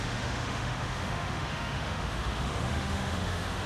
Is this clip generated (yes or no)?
yes